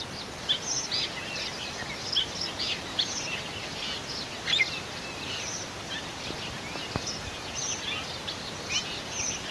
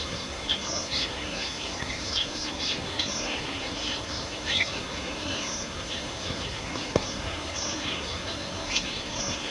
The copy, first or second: second